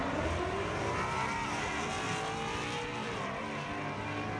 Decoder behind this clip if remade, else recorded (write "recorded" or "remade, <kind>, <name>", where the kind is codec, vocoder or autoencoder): recorded